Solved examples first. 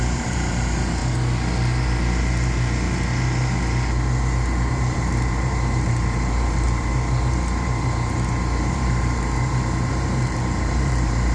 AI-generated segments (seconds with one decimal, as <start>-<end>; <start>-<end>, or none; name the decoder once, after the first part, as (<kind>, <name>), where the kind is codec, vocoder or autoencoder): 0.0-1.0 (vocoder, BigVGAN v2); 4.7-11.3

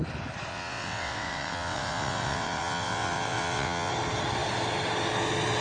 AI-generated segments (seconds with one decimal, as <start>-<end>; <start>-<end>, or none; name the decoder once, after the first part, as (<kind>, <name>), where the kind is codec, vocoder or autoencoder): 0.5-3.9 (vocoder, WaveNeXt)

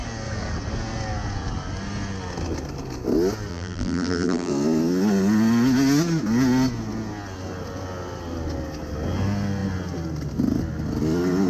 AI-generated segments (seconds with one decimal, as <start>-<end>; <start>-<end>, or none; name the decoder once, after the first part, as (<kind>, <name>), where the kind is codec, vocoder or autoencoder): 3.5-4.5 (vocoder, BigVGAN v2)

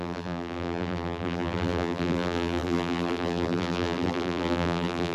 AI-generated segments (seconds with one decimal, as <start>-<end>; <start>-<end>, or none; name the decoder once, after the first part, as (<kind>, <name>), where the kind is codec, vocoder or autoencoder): 0.0-5.1 (vocoder, BigVGAN v2)

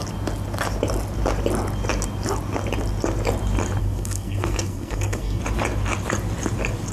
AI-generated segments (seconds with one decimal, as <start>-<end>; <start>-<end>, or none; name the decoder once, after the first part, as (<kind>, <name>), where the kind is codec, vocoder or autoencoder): 3.8-5.4 (codec, SNAC)

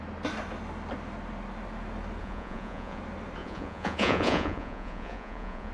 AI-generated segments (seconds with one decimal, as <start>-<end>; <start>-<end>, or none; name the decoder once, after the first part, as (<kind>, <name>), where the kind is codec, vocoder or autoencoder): 2.2-3.0 (vocoder, Vocos); 3.4-5.7

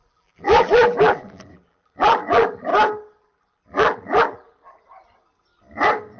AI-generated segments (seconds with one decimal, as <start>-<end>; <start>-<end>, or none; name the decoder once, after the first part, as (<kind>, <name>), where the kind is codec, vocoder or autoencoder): 0.0-2.7 (vocoder, BigVGAN v2); 3.2-4.8

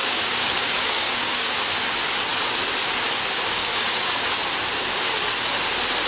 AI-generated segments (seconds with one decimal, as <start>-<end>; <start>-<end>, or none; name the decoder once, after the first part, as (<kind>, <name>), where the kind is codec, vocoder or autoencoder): 0.0-1.5 (codec, DAC); 3.6-4.3